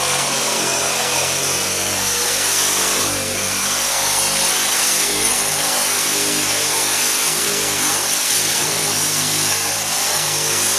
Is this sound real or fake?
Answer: fake